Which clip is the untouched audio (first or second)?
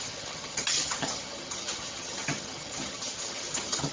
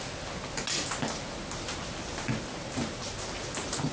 second